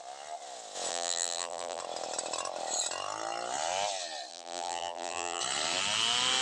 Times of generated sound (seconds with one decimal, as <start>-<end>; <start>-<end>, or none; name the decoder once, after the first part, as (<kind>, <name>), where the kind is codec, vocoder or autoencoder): 0.9-1.8 (vocoder, BigVGAN v2); 4.3-5.4